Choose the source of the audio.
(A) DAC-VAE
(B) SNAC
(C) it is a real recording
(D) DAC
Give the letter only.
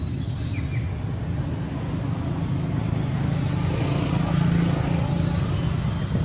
C